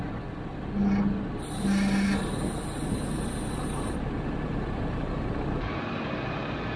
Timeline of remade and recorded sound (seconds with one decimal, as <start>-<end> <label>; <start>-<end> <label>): 0.0-4.5 recorded; 4.5-5.3 remade; 5.3-6.8 recorded